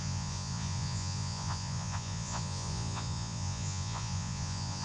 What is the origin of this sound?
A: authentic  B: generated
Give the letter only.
B